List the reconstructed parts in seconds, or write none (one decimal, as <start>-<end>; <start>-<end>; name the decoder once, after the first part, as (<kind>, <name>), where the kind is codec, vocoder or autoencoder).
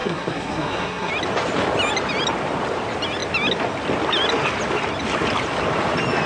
0.0-1.1 (codec, SNAC)